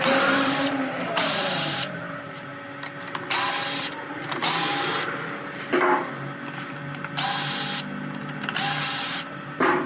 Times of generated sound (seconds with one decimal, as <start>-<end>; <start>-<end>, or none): 0.0-2.5; 3.8-4.4; 9.1-9.9